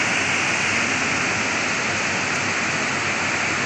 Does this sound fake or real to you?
real